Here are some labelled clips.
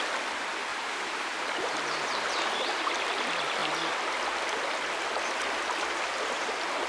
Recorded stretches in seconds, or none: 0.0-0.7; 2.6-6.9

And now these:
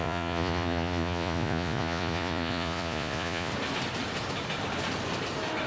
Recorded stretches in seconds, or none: 3.5-5.7

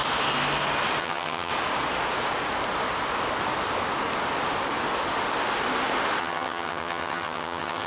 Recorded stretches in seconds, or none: 0.0-1.0; 1.5-6.2